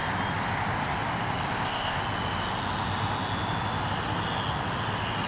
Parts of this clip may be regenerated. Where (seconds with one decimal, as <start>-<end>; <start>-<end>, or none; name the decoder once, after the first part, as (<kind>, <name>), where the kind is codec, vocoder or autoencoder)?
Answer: 1.5-2.0 (codec, ZipCodec)